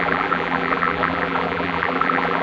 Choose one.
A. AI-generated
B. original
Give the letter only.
A